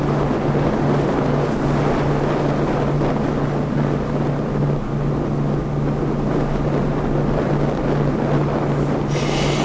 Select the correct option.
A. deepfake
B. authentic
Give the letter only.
B